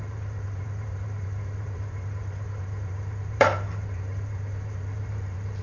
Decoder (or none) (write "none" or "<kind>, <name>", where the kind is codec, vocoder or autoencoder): vocoder, BigVGAN v2